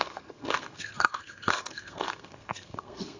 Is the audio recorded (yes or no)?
no